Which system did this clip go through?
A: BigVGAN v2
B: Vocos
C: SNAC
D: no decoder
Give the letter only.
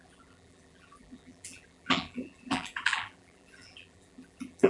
A